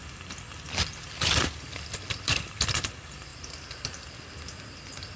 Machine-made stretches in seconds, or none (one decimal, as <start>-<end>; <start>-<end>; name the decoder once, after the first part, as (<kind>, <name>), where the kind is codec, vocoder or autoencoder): 0.0-2.8 (vocoder, BigVGAN v2); 3.3-4.4